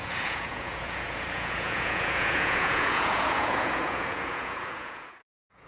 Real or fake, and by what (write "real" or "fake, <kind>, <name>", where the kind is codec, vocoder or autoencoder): fake, vocoder, Vocos